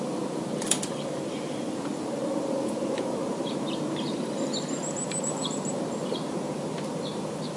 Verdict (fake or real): fake